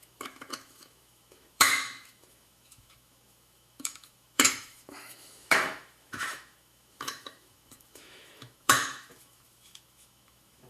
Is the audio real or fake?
fake